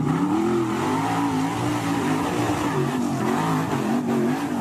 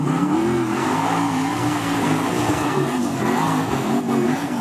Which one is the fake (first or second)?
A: second